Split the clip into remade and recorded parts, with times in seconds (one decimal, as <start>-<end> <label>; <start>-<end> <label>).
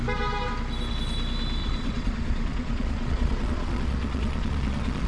0.0-1.6 recorded; 1.6-5.1 remade